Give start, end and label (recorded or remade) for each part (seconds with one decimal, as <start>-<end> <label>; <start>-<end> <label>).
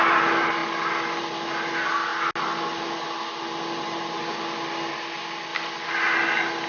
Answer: 0.0-6.7 recorded